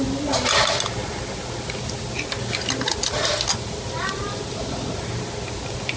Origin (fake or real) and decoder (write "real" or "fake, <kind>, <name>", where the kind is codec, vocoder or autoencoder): real